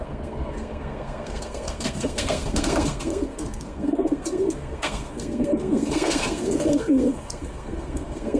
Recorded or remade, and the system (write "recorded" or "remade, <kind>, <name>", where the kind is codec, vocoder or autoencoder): remade, codec, SNAC